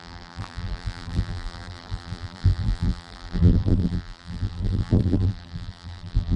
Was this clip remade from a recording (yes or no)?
yes